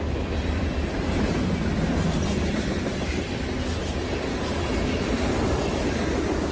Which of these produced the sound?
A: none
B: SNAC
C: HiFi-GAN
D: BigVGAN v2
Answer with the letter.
A